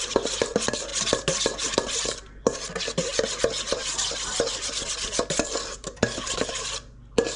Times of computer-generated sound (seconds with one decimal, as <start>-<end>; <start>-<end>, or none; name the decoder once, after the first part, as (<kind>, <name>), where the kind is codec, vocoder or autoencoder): none

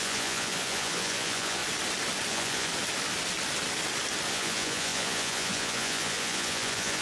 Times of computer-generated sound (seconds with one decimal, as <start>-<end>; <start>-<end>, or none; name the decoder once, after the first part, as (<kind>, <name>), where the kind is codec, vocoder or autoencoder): 0.0-1.6 (vocoder, Vocos); 2.3-2.7; 4.3-7.0

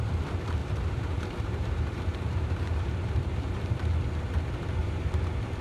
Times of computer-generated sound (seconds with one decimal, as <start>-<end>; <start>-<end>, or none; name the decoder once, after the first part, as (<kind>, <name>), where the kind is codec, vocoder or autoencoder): 0.6-4.0 (vocoder, BigVGAN v2); 4.8-5.6

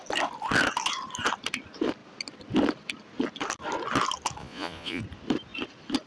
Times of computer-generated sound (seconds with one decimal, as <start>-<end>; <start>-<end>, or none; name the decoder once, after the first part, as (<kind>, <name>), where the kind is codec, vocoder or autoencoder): 4.4-5.0 (vocoder, Vocos)

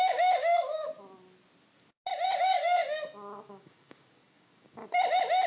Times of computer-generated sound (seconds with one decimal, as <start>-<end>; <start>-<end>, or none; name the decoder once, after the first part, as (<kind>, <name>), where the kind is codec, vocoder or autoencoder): 0.0-0.9 (codec, DAC); 2.4-2.8; 3.5-4.8